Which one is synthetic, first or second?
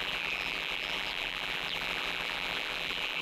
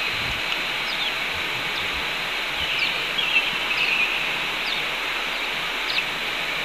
first